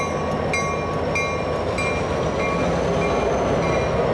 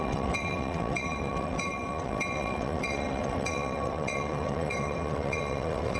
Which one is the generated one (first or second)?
second